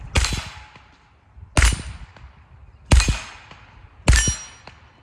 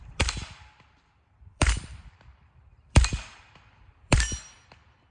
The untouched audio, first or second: first